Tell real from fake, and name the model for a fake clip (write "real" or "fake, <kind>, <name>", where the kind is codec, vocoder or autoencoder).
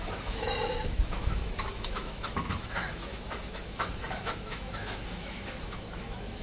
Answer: fake, autoencoder, DAC-VAE